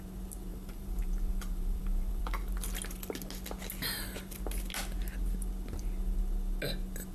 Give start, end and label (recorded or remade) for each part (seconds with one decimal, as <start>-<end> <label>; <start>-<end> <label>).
0.0-0.5 recorded; 0.5-2.2 remade; 2.2-7.1 recorded